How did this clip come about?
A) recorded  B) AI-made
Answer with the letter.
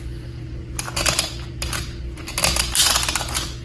A